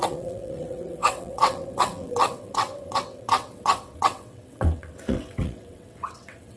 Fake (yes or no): yes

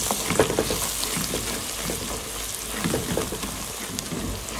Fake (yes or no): no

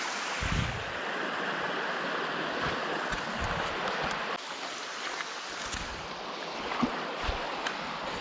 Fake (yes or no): no